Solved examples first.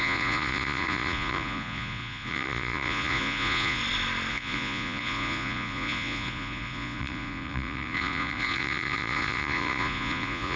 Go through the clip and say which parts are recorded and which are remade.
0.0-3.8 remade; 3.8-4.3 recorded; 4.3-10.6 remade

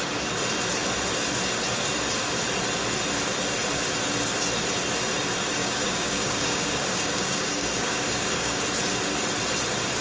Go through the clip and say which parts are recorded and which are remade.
0.0-5.6 recorded; 5.6-8.6 remade; 8.6-10.0 recorded

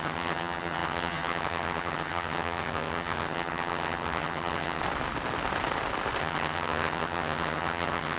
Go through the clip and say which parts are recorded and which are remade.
0.0-4.8 remade; 4.8-6.2 recorded; 6.2-8.2 remade

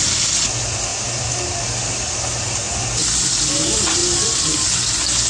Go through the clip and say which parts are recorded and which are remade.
0.0-5.3 recorded

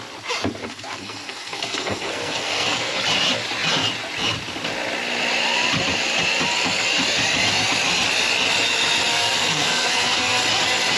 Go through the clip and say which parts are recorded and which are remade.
0.0-0.6 recorded; 0.6-3.0 remade; 3.0-9.1 recorded; 9.1-10.4 remade; 10.4-11.0 recorded